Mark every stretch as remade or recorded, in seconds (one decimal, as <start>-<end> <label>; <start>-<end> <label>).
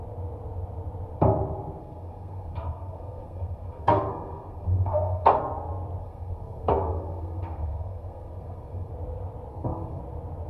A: 0.0-1.8 recorded; 1.8-5.4 remade; 5.4-6.0 recorded; 6.0-8.9 remade; 8.9-9.5 recorded; 9.5-10.0 remade; 10.0-10.5 recorded